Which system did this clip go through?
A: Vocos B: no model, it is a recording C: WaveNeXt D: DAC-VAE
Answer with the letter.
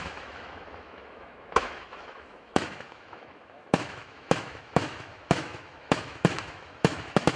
D